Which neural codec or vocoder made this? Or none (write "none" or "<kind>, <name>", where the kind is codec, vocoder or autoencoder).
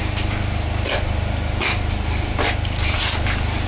none